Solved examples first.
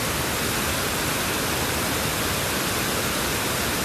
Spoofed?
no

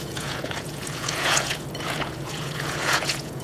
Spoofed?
yes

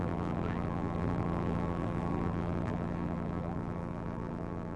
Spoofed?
yes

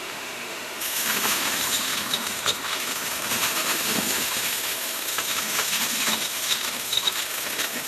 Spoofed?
yes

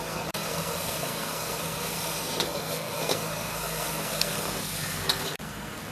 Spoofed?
yes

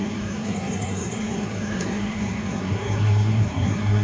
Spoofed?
yes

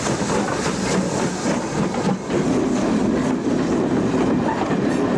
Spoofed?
no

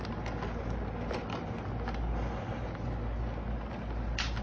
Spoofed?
no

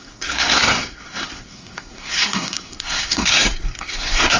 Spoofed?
yes